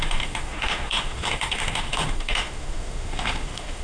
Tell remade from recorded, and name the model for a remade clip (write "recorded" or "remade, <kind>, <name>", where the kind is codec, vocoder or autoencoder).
remade, autoencoder, DAC-VAE